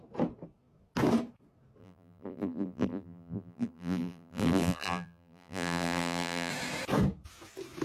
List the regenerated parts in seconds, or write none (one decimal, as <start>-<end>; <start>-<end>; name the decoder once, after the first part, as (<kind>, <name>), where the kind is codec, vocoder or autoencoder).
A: 1.8-6.5 (vocoder, BigVGAN v2)